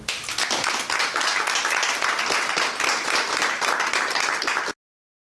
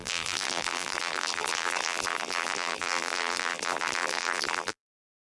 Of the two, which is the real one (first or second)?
first